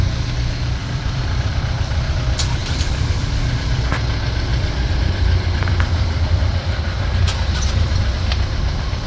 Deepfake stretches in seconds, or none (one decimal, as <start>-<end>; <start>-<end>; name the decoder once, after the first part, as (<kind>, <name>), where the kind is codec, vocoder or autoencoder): 0.8-1.5 (vocoder, BigVGAN v2); 2.6-3.3; 4.5-7.2